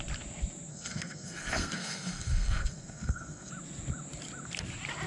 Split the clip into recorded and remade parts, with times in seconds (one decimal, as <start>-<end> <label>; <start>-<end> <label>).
0.0-0.7 recorded; 0.7-3.5 remade; 3.5-5.1 recorded